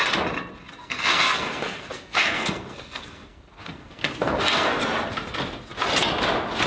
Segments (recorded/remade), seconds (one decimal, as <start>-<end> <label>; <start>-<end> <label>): 0.0-0.8 recorded; 0.8-4.8 remade; 4.8-6.7 recorded